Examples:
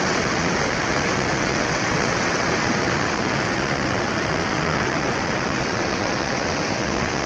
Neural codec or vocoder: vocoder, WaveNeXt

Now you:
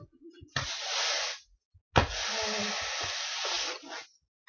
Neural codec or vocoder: none